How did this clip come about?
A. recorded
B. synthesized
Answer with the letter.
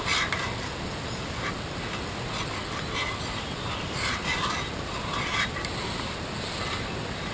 A